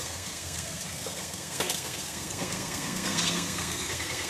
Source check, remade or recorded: remade